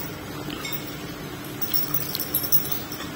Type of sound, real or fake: real